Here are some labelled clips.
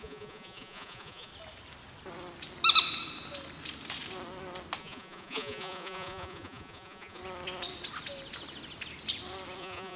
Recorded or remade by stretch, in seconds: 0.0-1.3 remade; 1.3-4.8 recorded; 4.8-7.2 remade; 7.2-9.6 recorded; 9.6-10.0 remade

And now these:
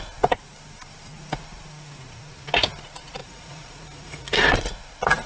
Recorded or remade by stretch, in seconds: 0.0-3.2 recorded; 3.2-4.7 remade; 4.7-5.3 recorded

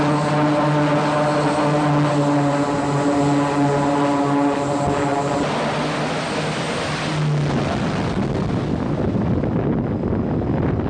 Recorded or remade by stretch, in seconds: 0.0-10.9 recorded

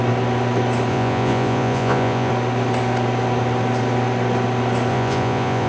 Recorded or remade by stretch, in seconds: 0.0-0.9 recorded; 0.9-2.3 remade; 2.3-4.9 recorded; 4.9-5.7 remade

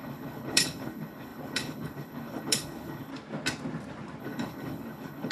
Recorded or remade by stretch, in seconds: 0.0-3.1 remade; 3.1-4.2 recorded; 4.2-5.3 remade

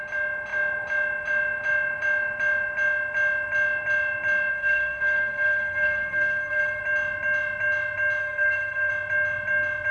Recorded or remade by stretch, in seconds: 0.0-4.5 recorded; 4.5-6.8 remade; 6.8-8.2 recorded; 8.2-8.9 remade; 8.9-9.9 recorded